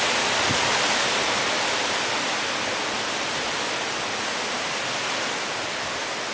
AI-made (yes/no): no